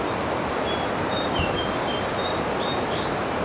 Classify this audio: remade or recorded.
remade